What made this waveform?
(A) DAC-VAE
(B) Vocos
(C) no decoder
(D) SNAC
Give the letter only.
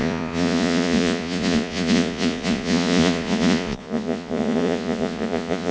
B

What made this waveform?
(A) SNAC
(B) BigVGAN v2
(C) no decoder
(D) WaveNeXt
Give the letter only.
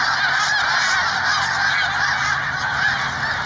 C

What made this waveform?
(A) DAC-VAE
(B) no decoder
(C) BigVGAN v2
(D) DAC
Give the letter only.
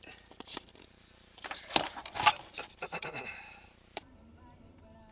C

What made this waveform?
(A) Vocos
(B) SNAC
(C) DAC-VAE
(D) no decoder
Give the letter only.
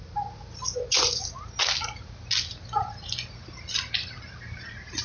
D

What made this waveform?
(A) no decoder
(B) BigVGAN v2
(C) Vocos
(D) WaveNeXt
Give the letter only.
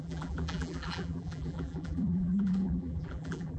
B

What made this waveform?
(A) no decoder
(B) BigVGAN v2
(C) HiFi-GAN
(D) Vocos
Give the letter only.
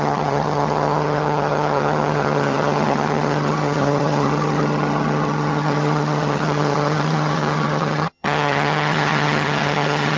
C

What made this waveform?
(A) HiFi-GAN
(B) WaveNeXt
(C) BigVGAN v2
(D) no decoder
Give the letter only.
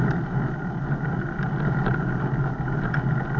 D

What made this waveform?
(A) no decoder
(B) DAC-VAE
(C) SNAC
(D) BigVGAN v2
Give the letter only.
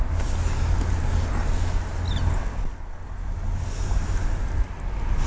A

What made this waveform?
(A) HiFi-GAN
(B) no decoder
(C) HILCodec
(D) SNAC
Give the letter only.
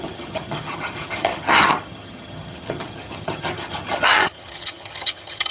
A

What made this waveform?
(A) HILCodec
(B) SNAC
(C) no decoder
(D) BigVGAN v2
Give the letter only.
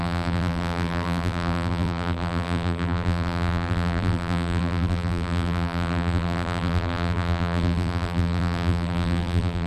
D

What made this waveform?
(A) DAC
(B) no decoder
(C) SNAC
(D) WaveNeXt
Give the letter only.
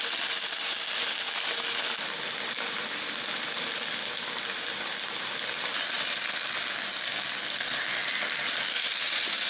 B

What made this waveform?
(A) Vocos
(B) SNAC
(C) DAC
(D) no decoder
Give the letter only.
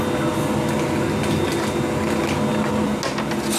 D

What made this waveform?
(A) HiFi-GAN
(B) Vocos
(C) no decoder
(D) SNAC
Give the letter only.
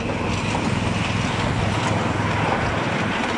C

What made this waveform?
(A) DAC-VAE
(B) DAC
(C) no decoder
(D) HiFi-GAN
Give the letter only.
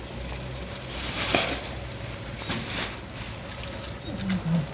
C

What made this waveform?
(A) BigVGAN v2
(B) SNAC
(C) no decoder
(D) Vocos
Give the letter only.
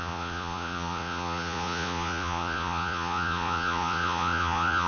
D